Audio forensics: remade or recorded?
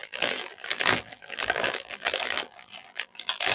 remade